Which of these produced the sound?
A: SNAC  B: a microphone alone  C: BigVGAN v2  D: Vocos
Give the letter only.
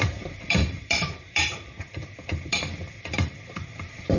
C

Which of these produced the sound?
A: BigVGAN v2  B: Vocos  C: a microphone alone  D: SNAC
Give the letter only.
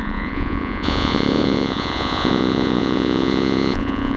B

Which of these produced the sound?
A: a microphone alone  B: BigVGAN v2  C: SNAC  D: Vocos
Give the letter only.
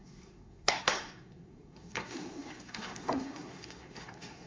C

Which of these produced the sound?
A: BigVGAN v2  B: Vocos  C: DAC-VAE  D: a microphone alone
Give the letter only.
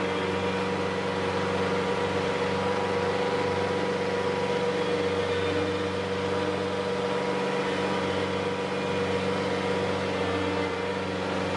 D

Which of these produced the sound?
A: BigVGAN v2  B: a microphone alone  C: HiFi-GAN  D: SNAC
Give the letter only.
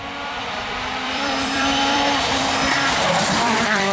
A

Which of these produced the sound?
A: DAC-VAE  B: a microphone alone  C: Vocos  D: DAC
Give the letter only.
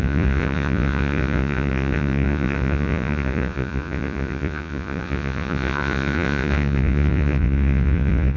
C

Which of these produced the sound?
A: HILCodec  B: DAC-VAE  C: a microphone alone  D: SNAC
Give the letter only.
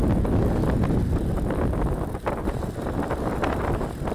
C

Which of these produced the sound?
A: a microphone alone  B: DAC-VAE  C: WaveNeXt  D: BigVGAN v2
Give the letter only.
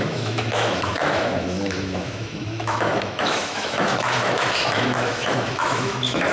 B